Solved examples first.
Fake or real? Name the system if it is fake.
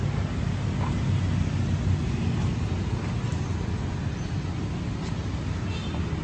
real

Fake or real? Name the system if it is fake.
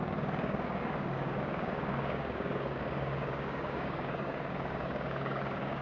fake, codec, DAC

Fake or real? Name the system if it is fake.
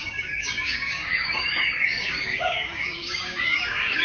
fake, codec, DAC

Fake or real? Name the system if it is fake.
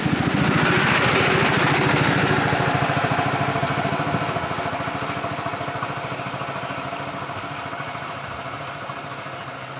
real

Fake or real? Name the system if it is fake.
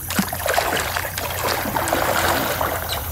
real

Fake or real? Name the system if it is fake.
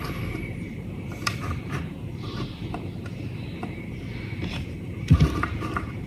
fake, vocoder, BigVGAN v2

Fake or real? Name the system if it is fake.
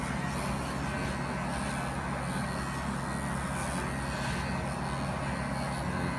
real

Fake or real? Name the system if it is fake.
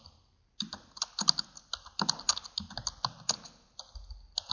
real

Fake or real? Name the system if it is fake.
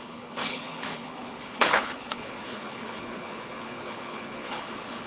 fake, codec, HILCodec